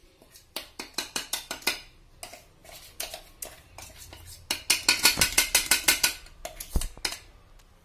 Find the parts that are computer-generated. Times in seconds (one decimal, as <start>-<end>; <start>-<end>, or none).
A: 0.0-1.9; 2.6-3.2